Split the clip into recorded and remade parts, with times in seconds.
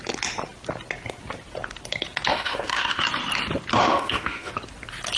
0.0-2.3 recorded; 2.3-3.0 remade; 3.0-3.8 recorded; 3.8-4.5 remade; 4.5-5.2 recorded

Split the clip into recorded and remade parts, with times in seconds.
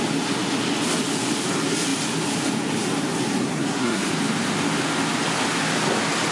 0.0-3.4 recorded; 3.4-4.1 remade; 4.1-6.3 recorded